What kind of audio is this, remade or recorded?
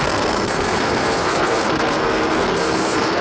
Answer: remade